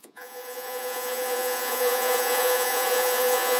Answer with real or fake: fake